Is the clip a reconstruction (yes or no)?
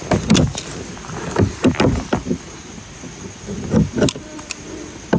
no